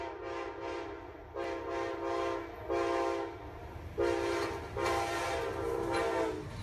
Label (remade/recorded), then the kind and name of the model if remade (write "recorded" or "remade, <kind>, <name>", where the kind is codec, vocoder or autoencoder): recorded